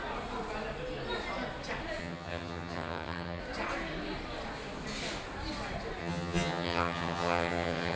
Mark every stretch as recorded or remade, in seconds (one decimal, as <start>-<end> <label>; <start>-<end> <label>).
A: 0.0-2.0 recorded; 2.0-3.4 remade; 3.4-6.0 recorded; 6.0-8.0 remade